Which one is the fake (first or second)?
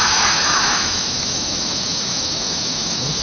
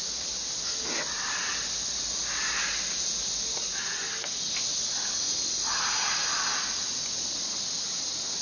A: first